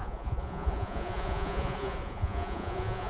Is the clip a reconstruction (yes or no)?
yes